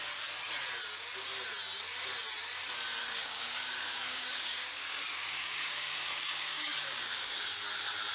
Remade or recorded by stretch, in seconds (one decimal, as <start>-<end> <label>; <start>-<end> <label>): 0.0-3.0 recorded; 3.0-7.4 remade; 7.4-8.1 recorded